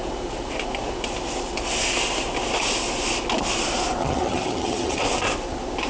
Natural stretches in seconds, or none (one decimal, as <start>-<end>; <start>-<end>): 0.0-4.0; 5.0-5.9